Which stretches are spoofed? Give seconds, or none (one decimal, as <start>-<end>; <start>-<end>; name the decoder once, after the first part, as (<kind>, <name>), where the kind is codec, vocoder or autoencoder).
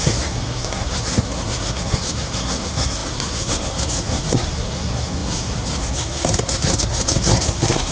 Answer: 0.0-7.9 (codec, SNAC)